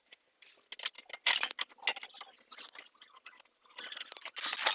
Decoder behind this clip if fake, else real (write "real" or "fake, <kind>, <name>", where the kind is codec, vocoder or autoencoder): real